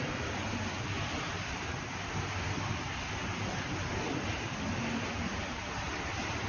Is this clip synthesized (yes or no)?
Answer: no